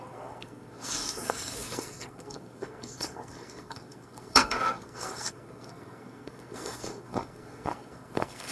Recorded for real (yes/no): no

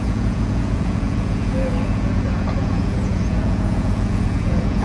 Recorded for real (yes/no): no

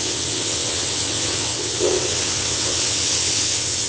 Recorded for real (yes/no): no